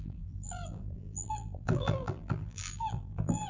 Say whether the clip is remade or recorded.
remade